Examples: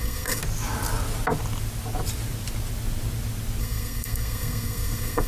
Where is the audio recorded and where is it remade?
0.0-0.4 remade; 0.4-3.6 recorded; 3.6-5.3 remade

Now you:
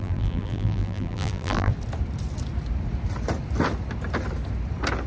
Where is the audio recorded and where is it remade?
0.0-1.7 remade; 1.7-5.1 recorded

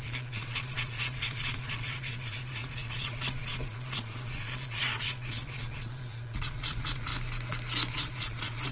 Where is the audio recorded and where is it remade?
0.0-7.1 remade; 7.1-7.9 recorded; 7.9-8.7 remade